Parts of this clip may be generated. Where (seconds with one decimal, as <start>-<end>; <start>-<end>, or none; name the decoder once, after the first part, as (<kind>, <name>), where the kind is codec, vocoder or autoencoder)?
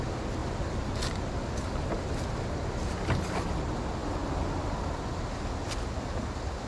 0.4-1.0 (vocoder, BigVGAN v2); 1.8-3.1